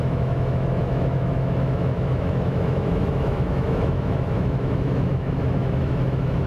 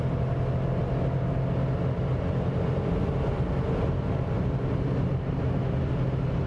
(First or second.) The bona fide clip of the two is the second